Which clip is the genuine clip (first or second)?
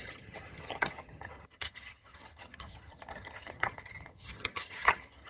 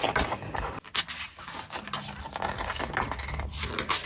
second